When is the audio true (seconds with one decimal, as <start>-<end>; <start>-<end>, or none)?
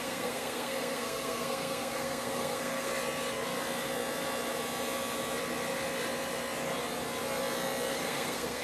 2.9-7.9